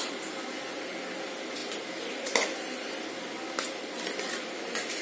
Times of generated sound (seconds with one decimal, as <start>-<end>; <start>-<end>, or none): none